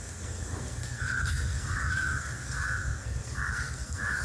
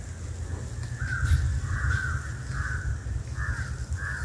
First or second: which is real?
second